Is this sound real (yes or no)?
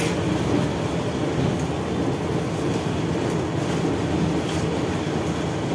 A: yes